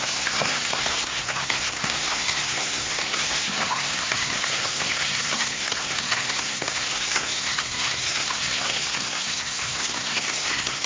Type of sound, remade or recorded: remade